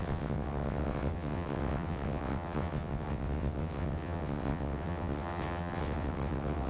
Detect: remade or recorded remade